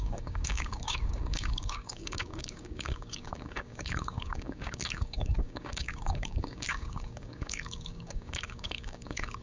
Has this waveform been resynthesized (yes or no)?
yes